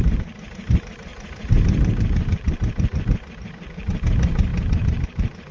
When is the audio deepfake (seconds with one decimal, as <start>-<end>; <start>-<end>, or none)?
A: 0.0-5.5